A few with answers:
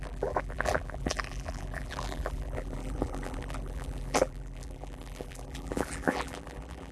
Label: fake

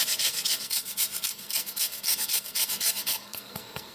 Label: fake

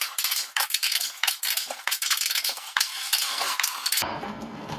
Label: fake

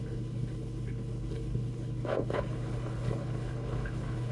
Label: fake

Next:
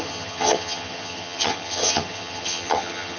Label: fake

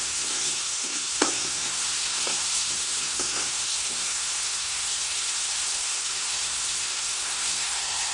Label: fake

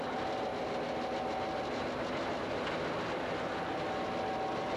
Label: real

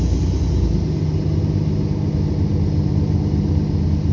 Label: real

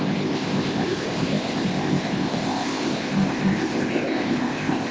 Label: fake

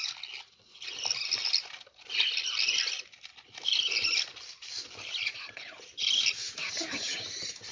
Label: real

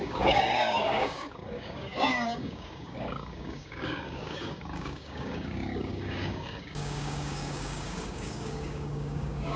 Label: fake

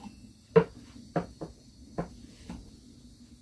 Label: real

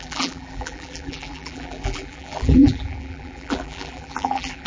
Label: fake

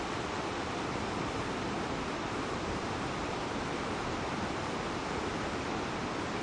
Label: fake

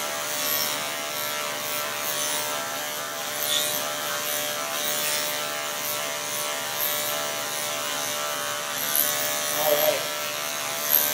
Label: real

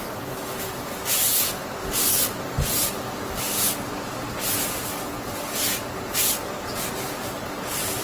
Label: real